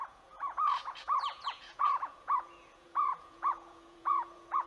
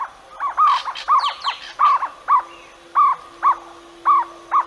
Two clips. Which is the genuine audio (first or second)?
second